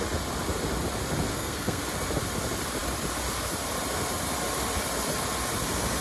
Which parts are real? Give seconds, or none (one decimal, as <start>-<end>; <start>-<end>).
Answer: 0.0-1.3; 1.8-6.0